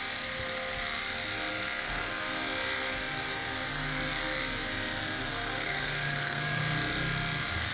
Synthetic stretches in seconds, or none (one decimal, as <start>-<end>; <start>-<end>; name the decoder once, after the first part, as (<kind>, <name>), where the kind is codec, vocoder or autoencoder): 1.5-2.1 (codec, SNAC); 5.3-6.6